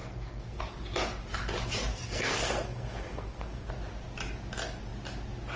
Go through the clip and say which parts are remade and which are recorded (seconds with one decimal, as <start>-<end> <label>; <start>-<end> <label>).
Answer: 0.0-0.6 remade; 0.6-1.9 recorded; 1.9-3.7 remade; 3.7-5.6 recorded